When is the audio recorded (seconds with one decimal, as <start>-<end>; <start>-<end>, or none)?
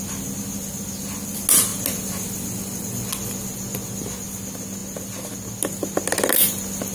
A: 0.0-6.9